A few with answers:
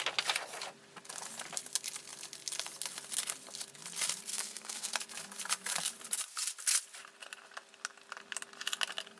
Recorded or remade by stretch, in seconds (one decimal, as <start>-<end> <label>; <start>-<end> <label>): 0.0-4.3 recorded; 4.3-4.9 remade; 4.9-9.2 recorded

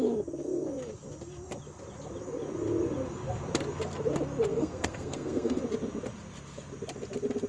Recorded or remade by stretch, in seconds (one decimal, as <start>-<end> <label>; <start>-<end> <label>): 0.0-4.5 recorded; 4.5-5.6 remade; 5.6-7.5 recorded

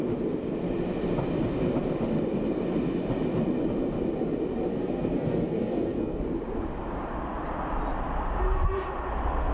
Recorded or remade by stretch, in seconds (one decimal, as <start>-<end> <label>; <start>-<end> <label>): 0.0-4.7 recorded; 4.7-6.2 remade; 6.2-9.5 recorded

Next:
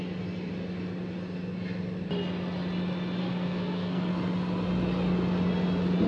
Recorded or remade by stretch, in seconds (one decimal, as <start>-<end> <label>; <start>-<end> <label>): 0.0-3.2 recorded; 3.2-4.1 remade; 4.1-6.1 recorded

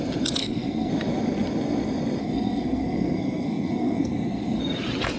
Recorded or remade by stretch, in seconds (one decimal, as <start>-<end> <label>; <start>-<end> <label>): 0.0-0.4 recorded; 0.4-0.9 remade; 0.9-2.2 recorded; 2.2-4.6 remade; 4.6-5.2 recorded

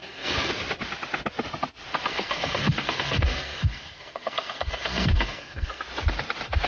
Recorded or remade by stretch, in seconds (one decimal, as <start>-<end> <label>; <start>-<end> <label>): 0.0-0.5 remade; 0.5-2.1 recorded; 2.1-5.8 remade; 5.8-6.7 recorded